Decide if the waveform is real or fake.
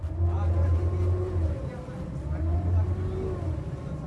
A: real